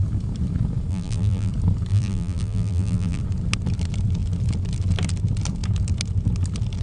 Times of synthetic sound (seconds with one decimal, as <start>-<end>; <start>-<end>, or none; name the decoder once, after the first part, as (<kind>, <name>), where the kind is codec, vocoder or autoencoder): 0.9-1.5 (vocoder, BigVGAN v2); 1.9-3.2

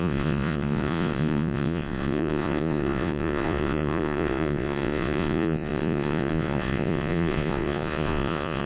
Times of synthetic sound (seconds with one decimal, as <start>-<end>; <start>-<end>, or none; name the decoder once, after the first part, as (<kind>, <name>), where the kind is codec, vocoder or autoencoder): 0.0-8.7 (vocoder, Vocos)

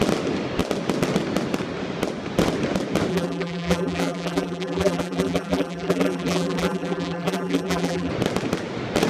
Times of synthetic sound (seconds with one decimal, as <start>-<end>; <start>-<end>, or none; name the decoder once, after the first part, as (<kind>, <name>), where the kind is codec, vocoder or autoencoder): 3.1-8.1 (vocoder, BigVGAN v2)

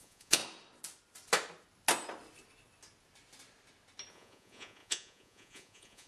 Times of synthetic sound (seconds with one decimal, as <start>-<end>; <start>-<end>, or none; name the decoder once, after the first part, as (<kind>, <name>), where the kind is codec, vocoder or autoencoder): 0.0-0.4 (vocoder, Vocos); 4.1-6.1

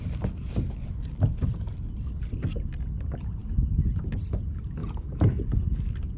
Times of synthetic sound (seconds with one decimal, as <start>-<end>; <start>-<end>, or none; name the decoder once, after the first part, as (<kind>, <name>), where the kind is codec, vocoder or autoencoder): 4.8-5.4 (autoencoder, DAC-VAE)

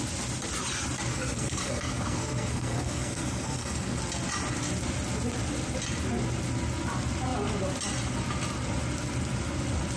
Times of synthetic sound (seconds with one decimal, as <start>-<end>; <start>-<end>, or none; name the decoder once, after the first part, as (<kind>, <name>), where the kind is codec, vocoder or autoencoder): 1.1-4.0 (codec, SNAC)

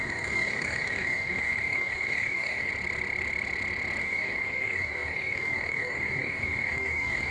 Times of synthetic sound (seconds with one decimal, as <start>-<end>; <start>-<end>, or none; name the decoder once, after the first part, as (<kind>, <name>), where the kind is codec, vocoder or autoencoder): 0.0-2.7 (codec, DAC); 4.0-7.3

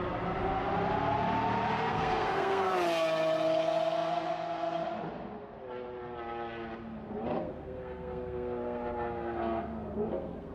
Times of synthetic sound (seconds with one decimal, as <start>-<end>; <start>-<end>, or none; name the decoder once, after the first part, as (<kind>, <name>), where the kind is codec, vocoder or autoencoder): 1.9-2.7 (codec, SNAC); 7.3-10.5